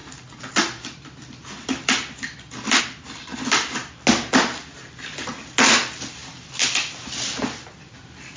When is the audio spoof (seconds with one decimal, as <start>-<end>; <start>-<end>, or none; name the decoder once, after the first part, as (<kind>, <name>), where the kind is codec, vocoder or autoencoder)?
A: none